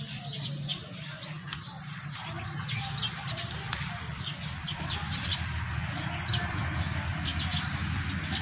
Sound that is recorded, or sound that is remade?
recorded